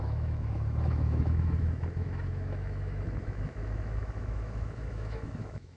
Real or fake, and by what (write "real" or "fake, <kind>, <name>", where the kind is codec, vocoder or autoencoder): fake, autoencoder, DAC-VAE